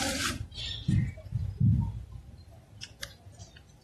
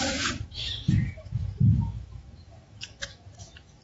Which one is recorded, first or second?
first